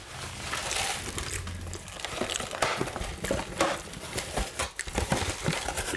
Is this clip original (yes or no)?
yes